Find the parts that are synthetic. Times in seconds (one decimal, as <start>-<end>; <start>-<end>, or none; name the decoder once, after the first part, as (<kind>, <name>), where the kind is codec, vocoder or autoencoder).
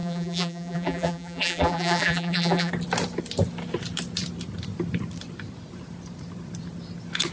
0.0-2.7 (vocoder, BigVGAN v2)